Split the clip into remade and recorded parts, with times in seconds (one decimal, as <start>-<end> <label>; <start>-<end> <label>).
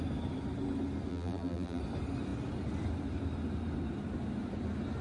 0.0-1.1 recorded; 1.1-1.8 remade; 1.8-5.0 recorded